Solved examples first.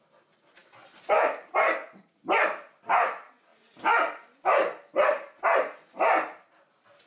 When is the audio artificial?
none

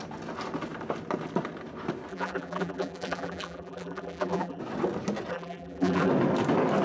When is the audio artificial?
2.1-4.6 (vocoder, BigVGAN v2); 5.3-6.1

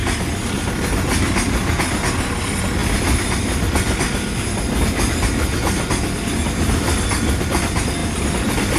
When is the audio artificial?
none

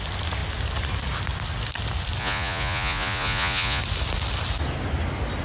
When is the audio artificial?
2.2-3.8 (vocoder, Vocos)

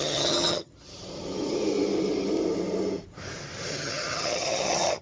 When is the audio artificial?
0.0-0.7 (vocoder, HiFi-GAN); 3.7-5.0